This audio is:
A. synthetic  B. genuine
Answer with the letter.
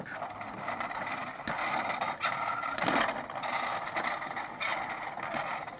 B